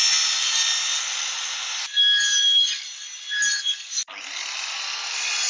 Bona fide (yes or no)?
yes